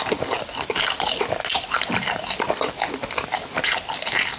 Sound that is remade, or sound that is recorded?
recorded